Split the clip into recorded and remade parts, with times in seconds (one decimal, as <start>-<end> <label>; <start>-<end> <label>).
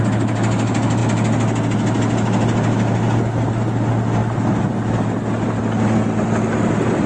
0.0-7.1 recorded